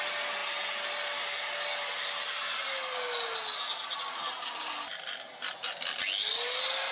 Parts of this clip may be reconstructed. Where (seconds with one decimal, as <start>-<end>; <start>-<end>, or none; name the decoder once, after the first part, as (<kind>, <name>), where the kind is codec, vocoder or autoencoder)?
none

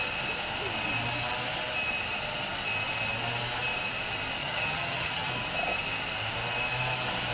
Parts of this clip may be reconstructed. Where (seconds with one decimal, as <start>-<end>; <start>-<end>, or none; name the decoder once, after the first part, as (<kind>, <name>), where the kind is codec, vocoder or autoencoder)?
4.4-5.3 (vocoder, HiFi-GAN)

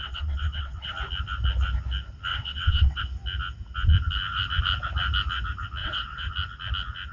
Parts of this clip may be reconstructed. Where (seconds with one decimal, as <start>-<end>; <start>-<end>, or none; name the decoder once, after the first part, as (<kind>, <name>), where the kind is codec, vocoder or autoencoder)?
0.0-0.9 (vocoder, WaveNeXt); 2.3-3.0; 5.8-6.3